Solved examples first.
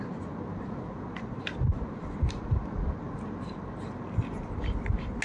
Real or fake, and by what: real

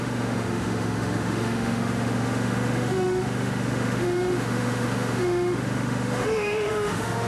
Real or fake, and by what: fake, autoencoder, DAC-VAE